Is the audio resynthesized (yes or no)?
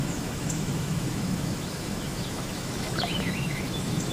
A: yes